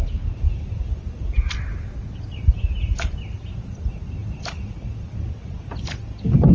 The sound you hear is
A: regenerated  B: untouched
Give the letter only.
B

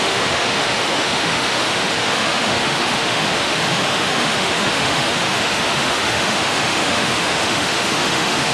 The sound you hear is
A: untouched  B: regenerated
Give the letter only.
B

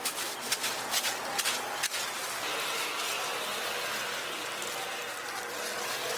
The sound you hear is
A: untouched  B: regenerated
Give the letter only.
A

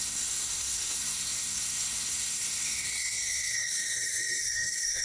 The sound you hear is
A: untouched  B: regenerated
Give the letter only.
B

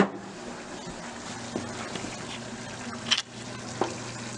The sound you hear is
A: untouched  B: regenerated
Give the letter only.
A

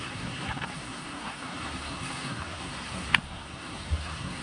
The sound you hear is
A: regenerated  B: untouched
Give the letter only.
A